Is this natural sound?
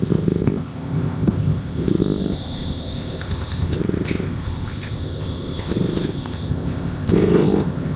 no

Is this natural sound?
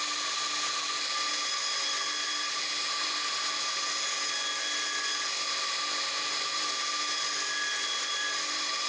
yes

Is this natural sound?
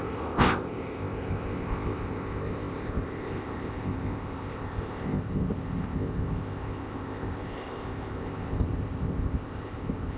no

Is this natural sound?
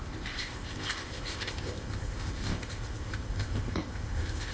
no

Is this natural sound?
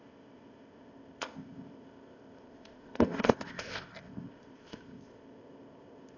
no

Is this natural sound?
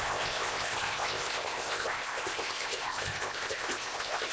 no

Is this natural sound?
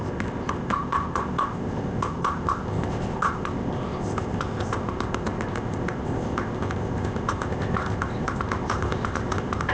no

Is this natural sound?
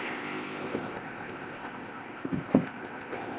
no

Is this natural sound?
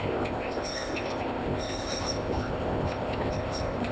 no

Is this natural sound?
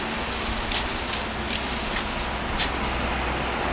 yes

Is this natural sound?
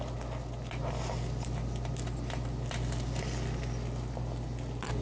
yes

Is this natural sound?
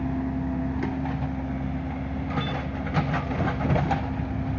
yes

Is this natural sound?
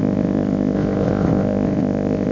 no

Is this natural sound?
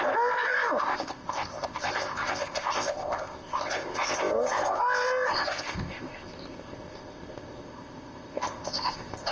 no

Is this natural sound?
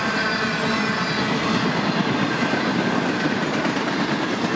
yes